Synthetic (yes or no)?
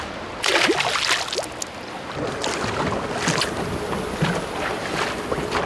no